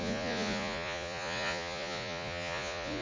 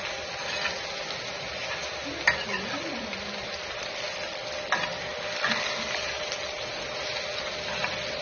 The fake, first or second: first